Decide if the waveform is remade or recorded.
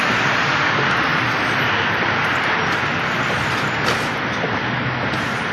recorded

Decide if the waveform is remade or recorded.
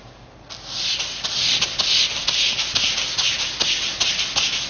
recorded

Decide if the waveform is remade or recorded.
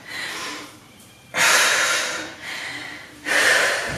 remade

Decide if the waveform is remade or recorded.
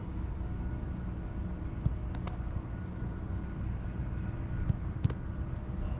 recorded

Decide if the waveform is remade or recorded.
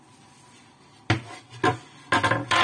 recorded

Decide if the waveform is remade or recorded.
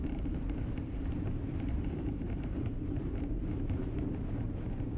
remade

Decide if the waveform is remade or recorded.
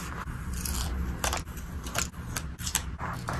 recorded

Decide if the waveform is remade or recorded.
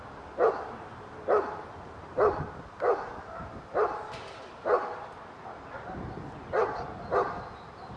recorded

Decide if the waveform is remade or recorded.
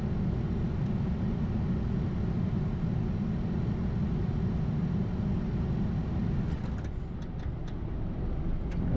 recorded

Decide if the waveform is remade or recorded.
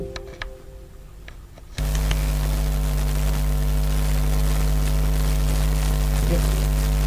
recorded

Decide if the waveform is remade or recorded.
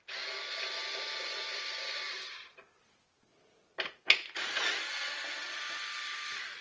recorded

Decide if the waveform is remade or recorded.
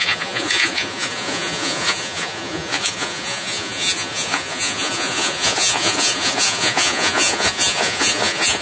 remade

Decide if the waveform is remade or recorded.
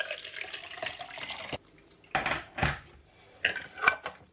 recorded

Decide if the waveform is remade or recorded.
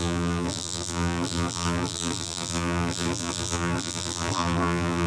remade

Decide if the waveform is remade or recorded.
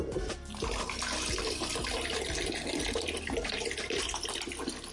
remade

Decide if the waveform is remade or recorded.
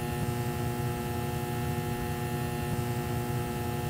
recorded